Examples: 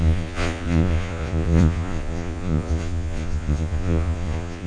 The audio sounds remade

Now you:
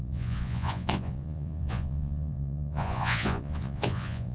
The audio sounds remade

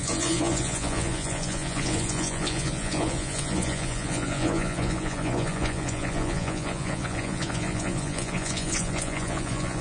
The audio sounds remade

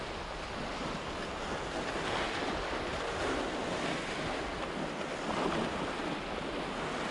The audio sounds recorded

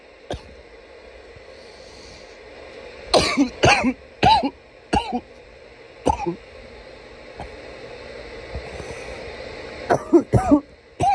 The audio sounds recorded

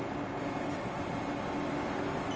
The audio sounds recorded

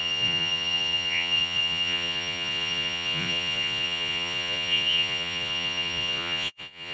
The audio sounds remade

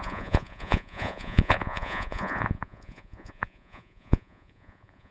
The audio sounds remade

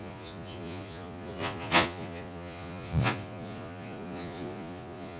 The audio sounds remade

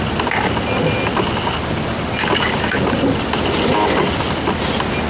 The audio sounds recorded